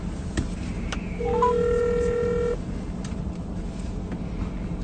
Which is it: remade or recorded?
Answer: recorded